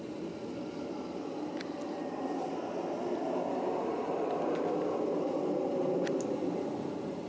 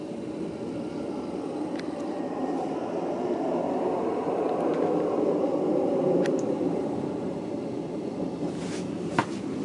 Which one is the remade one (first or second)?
second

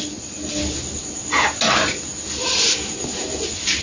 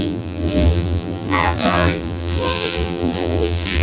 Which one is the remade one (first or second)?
second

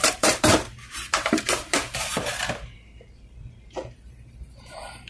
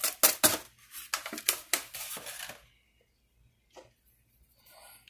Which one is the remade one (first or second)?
first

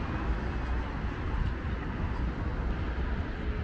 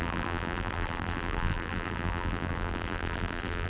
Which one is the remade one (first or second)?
second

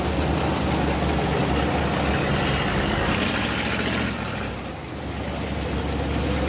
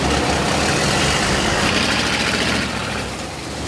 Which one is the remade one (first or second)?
second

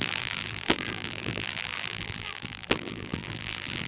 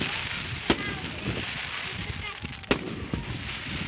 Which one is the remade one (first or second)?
first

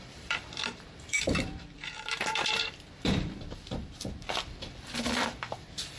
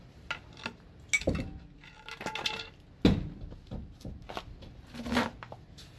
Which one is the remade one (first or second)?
first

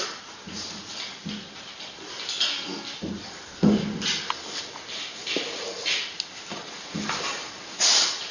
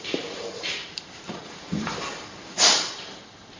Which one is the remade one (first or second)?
second